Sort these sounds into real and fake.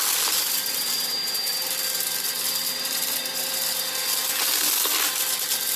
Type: real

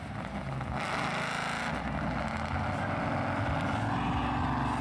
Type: real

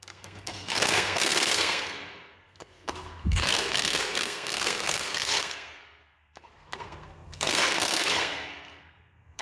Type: fake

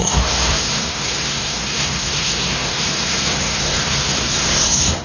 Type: fake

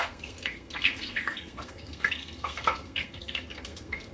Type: fake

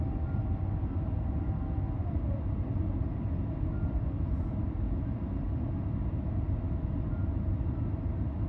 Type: real